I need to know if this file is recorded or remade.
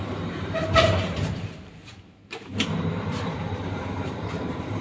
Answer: remade